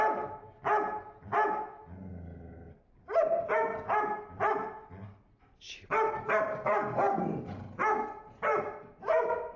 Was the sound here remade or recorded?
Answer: recorded